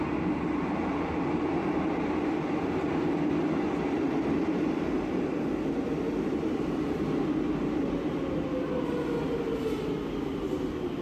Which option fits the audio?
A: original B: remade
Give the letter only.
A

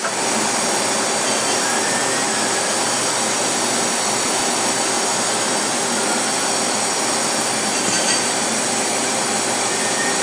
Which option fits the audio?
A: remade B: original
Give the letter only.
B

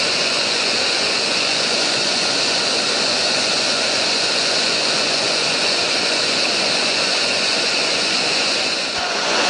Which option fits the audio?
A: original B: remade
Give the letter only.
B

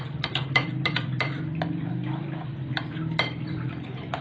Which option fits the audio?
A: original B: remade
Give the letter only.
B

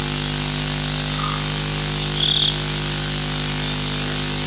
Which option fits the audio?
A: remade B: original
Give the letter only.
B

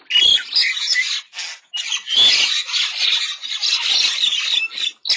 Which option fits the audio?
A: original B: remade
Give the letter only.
A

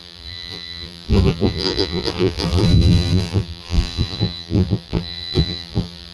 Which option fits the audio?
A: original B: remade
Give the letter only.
B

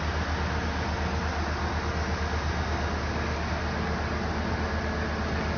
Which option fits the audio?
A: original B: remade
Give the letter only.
A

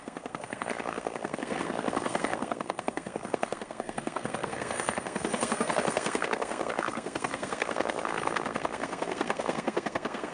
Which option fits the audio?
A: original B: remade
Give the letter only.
B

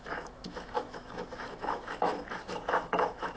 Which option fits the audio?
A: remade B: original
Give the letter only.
A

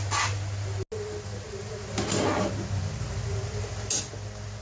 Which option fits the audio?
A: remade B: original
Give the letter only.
B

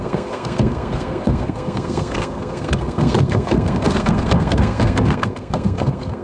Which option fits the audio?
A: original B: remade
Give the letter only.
B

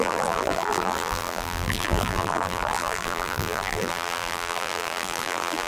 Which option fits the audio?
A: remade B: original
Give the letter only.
A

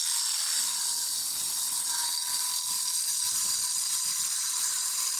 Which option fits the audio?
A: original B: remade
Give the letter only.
A